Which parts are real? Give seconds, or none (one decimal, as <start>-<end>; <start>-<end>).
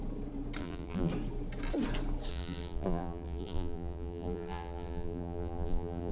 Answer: 0.0-0.6; 1.1-2.3